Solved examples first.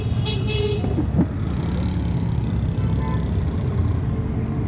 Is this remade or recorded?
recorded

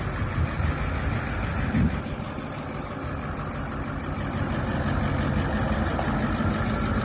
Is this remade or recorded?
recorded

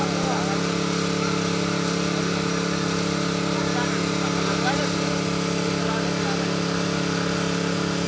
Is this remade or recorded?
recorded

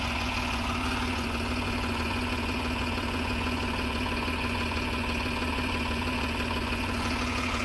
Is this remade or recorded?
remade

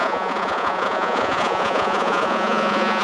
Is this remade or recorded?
remade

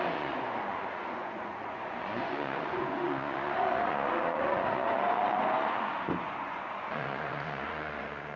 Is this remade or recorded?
remade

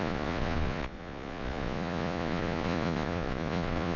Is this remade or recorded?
remade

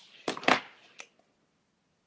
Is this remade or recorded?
recorded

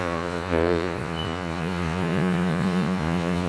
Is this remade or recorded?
remade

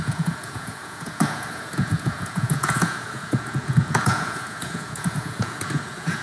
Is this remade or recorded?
remade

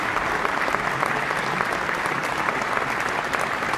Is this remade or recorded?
recorded